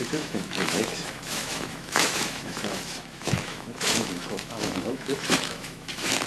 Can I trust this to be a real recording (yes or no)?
no